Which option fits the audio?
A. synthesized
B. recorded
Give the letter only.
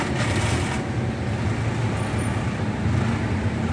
B